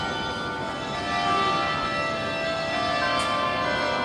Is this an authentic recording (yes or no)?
yes